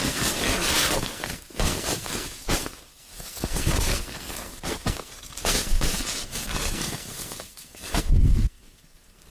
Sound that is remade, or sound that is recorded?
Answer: remade